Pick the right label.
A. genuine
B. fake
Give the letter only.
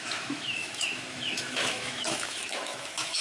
B